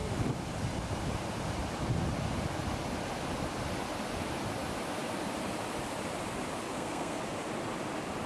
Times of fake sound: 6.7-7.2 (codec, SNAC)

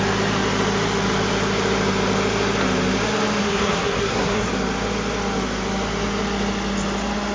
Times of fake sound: 3.4-4.5 (codec, SNAC)

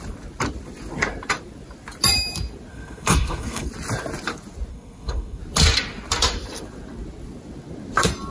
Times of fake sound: 2.7-3.7 (codec, SNAC); 4.7-5.4

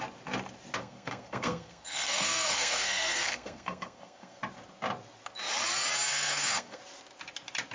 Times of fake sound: 0.8-4.4 (codec, SNAC); 6.1-6.8

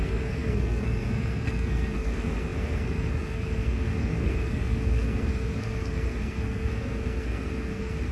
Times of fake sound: 0.0-8.1 (codec, SNAC)

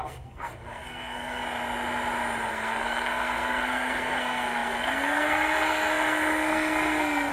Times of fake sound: 0.0-1.4 (codec, SNAC); 2.5-7.3

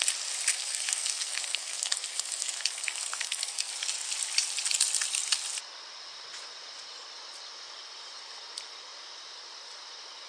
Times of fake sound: 0.5-3.7 (codec, SNAC)